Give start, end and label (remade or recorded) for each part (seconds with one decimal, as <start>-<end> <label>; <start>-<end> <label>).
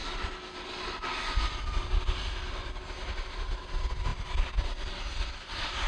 0.0-5.9 recorded